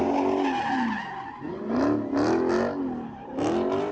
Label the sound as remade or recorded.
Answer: recorded